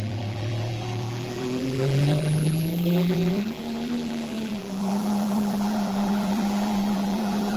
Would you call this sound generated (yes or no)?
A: yes